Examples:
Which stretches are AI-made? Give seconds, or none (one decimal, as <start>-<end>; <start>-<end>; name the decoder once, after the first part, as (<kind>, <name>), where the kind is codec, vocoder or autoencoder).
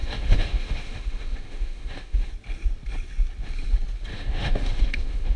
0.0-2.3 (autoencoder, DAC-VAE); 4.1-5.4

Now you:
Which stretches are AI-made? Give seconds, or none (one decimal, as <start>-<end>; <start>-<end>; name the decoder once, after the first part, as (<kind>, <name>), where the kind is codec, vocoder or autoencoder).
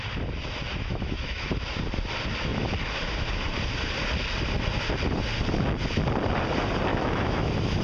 0.7-1.5 (autoencoder, DAC-VAE); 6.9-7.8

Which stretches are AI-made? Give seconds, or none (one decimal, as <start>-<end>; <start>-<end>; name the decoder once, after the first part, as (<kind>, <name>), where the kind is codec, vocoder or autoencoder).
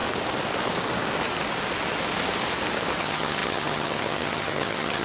3.0-5.0 (vocoder, HiFi-GAN)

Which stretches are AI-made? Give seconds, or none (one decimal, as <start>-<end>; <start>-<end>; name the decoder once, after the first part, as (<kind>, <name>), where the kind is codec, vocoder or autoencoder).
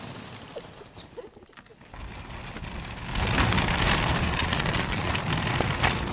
4.4-5.1 (vocoder, Vocos)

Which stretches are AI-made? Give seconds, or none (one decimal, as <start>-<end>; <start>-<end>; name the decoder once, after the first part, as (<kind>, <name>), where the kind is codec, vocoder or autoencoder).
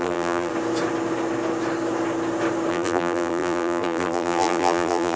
0.0-0.5 (vocoder, BigVGAN v2); 2.7-5.2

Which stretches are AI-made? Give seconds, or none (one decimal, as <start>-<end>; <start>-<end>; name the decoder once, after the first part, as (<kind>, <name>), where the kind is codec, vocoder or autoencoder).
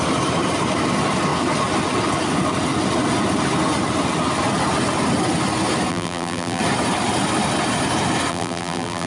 5.9-6.6 (vocoder, BigVGAN v2); 8.3-9.1